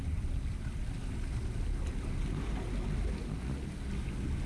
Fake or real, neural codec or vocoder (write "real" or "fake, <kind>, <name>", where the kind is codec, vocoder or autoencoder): real